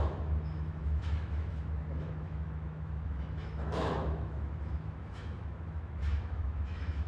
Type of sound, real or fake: fake